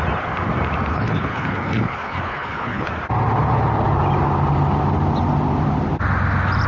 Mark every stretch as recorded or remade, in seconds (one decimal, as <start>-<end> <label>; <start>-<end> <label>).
0.0-0.9 recorded; 0.9-2.9 remade; 2.9-6.7 recorded